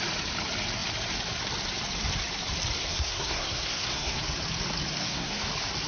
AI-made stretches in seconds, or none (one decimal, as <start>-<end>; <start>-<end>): 2.8-4.2; 5.0-5.5